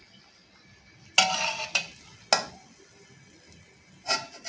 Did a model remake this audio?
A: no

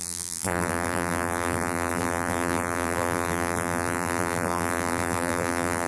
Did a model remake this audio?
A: yes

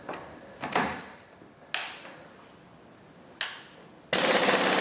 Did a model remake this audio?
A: no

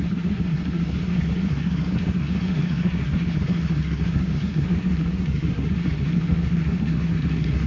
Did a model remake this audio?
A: yes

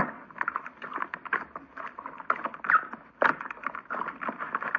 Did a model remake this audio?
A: no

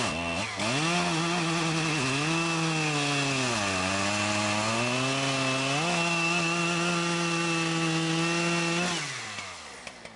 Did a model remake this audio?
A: no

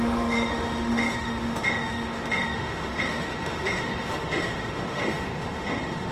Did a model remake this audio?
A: yes